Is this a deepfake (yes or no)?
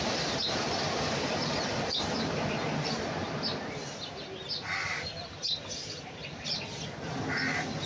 no